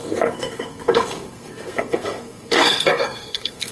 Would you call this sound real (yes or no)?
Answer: no